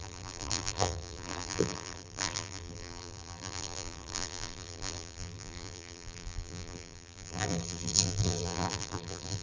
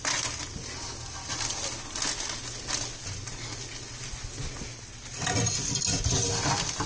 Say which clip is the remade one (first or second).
first